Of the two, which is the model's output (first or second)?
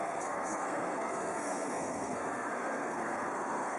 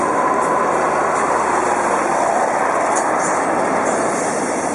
first